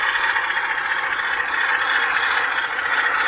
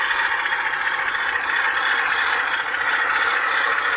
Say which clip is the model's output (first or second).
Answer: second